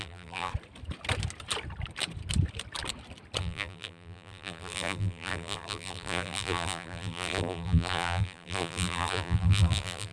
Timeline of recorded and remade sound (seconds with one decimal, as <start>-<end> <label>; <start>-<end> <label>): 0.0-0.5 remade; 0.5-3.4 recorded; 3.4-10.1 remade